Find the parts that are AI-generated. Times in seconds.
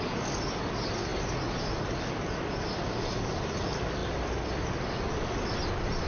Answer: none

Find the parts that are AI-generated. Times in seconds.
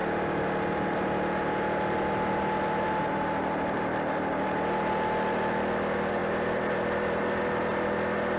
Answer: 6.2-7.2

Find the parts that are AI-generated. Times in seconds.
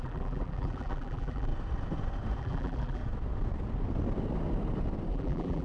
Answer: 0.0-1.5; 2.4-3.0; 5.1-5.6